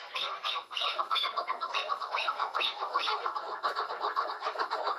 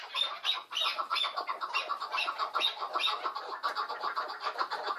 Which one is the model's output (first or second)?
first